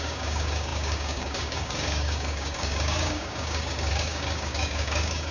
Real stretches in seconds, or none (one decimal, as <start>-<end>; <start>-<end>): none